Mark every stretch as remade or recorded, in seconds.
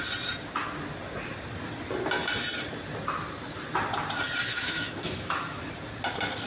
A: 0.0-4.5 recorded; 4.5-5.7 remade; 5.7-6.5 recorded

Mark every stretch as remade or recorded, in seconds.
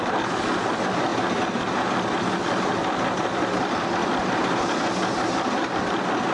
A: 0.0-6.3 recorded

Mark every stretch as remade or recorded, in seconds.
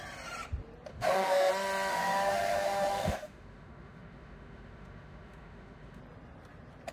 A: 0.0-0.9 recorded; 0.9-1.5 remade; 1.5-1.9 recorded; 1.9-6.0 remade; 6.0-6.9 recorded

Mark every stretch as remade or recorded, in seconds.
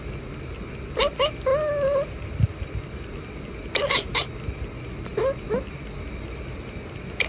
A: 0.0-7.3 recorded